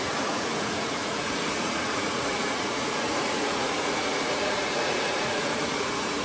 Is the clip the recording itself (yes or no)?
no